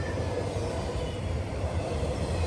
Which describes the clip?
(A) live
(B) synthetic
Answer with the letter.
B